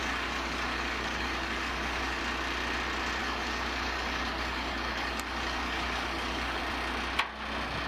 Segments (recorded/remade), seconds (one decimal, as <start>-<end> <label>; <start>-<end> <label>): 0.0-2.2 remade; 2.2-3.2 recorded; 3.2-6.6 remade; 6.6-7.9 recorded